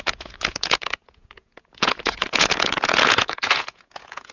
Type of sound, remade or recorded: remade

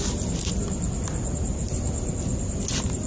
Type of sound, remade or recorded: recorded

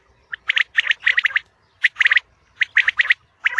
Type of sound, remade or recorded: recorded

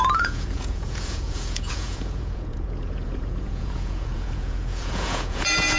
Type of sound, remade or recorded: remade